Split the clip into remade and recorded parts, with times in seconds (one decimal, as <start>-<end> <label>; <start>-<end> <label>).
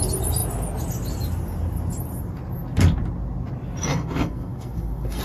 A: 0.0-3.9 recorded; 3.9-5.2 remade